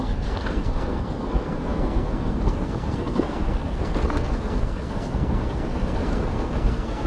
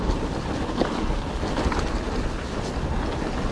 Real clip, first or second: second